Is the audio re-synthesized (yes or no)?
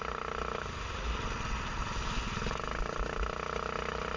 no